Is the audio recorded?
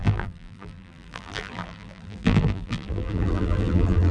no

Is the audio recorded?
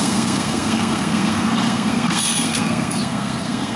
no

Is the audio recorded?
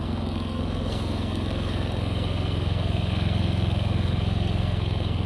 no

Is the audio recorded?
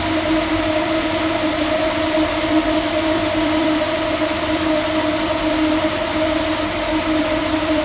no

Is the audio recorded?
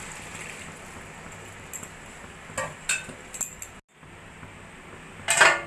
yes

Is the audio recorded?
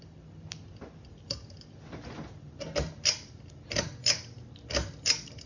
yes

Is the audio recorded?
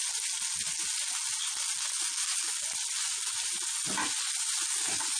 yes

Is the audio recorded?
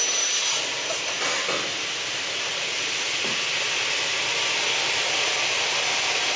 yes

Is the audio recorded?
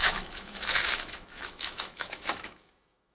no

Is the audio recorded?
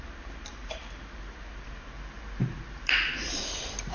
no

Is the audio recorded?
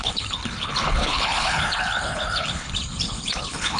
no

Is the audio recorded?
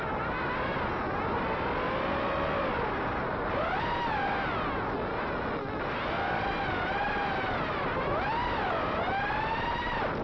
yes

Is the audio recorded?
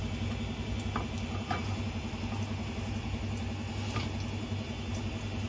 yes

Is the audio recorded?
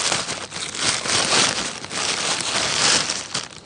yes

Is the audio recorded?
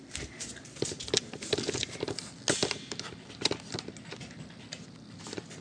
yes